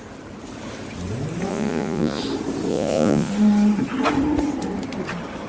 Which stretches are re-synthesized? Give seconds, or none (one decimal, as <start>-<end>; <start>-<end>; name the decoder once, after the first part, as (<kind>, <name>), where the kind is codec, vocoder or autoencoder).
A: 1.5-2.2 (vocoder, Vocos); 2.7-3.3